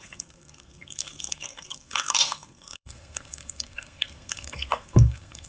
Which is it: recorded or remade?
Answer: remade